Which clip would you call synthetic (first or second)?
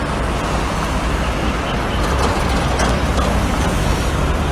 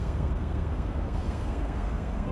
second